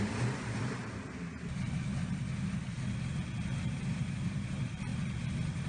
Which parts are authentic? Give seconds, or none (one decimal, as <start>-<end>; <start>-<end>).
0.8-3.6; 4.9-5.7